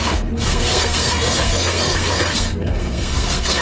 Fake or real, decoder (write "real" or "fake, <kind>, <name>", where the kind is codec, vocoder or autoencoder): fake, codec, SNAC